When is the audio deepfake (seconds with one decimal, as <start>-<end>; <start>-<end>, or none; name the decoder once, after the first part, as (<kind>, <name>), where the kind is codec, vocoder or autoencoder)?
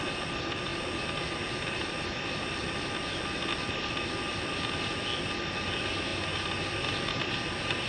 6.1-6.7 (vocoder, BigVGAN v2)